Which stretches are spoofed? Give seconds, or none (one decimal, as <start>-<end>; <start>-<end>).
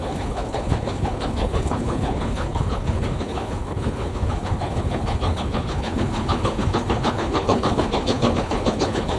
0.0-9.2